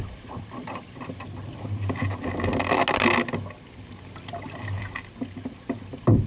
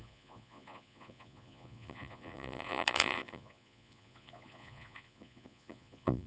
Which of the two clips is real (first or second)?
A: first